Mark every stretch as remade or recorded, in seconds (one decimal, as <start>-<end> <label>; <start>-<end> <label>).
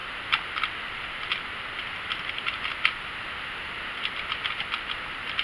0.0-0.9 remade; 0.9-5.4 recorded